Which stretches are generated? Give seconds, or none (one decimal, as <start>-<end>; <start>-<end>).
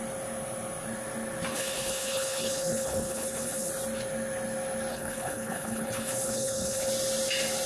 1.5-3.7; 4.9-6.9